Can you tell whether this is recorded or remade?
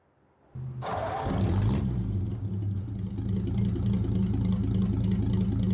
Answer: recorded